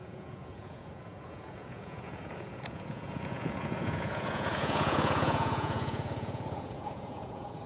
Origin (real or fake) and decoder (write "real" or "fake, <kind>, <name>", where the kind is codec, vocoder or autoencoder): fake, vocoder, Vocos